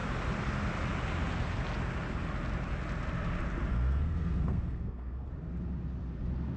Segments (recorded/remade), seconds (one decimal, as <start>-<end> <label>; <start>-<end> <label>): 0.0-3.7 recorded; 3.7-5.3 remade; 5.3-6.6 recorded